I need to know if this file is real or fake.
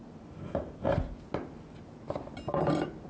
real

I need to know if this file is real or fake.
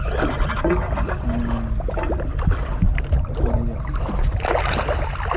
real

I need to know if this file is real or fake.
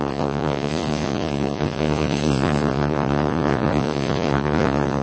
fake